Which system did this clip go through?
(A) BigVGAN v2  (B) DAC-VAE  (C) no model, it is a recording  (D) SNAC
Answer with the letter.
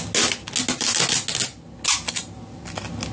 C